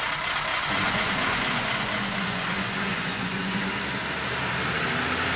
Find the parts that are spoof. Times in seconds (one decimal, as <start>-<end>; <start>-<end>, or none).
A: 0.5-3.7